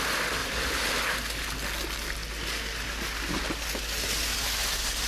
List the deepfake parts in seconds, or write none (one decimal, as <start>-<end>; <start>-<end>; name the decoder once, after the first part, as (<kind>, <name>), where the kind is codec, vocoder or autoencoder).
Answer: 0.4-1.0 (vocoder, BigVGAN v2)